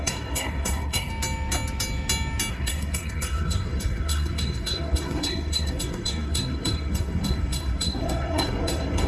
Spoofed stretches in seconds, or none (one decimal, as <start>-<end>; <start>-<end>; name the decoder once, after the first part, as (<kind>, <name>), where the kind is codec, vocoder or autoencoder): 0.0-1.1 (codec, SNAC); 2.5-9.1